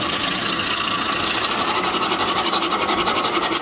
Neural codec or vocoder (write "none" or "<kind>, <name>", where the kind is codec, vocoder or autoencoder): none